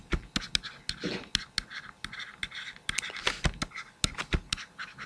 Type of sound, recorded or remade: recorded